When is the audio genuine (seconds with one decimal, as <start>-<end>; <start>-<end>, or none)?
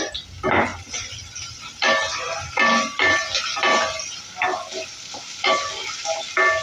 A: 0.0-6.6